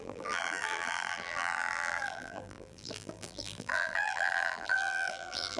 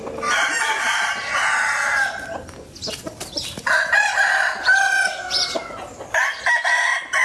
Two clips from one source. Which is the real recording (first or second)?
second